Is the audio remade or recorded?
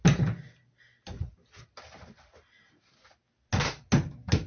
recorded